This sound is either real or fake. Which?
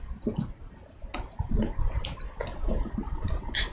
real